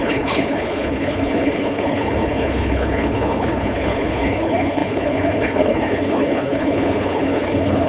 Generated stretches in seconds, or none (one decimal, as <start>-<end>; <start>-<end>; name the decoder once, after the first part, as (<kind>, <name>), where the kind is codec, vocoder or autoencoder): 0.0-7.9 (codec, HILCodec)